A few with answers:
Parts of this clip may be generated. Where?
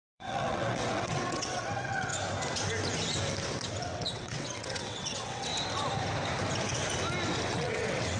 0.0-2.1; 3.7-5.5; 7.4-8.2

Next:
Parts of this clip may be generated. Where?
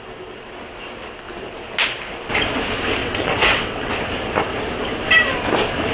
3.0-3.9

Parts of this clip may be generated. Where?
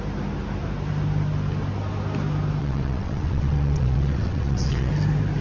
2.6-4.9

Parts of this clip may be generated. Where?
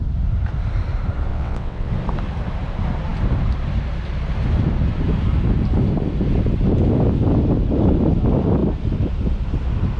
1.3-1.9